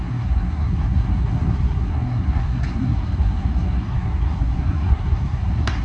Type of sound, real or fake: fake